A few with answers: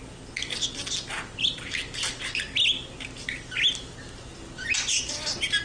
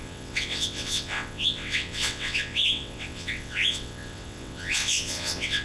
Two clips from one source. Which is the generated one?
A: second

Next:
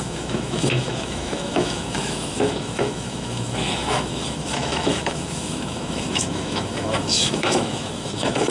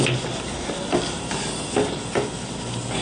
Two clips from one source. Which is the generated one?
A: first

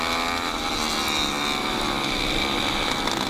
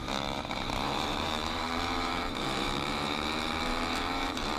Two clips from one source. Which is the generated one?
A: second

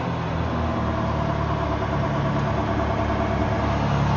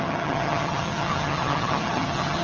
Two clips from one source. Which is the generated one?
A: second